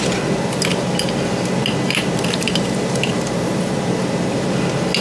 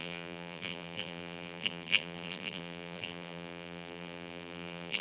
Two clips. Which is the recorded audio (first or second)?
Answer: first